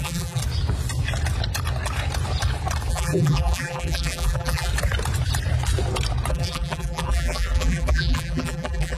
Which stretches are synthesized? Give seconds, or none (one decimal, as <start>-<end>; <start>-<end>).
0.0-0.4; 2.9-4.7; 6.3-9.0